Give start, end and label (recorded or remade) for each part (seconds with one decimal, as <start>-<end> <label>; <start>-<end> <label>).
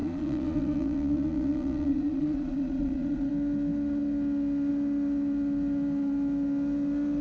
0.0-3.3 remade; 3.3-7.2 recorded